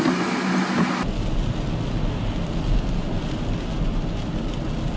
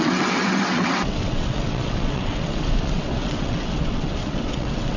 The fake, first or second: second